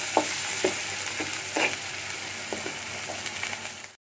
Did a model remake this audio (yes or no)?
no